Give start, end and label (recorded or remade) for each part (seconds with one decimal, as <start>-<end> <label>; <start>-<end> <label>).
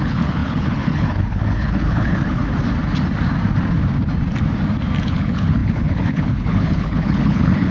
0.0-2.4 remade; 2.4-5.0 recorded; 5.0-7.7 remade